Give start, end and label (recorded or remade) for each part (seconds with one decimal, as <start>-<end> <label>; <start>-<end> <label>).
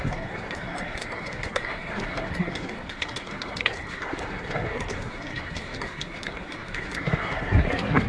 0.0-8.1 remade